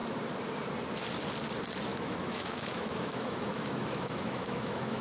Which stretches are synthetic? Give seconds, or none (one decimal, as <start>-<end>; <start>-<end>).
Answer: 1.9-5.0